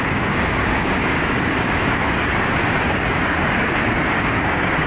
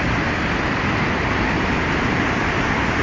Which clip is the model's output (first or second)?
first